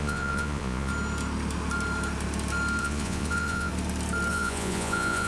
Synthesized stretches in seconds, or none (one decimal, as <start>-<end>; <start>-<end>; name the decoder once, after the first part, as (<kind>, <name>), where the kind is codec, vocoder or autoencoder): 0.0-0.9 (vocoder, Vocos); 2.8-3.7; 4.3-5.3